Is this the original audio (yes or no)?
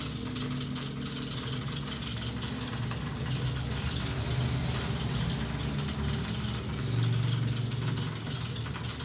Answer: yes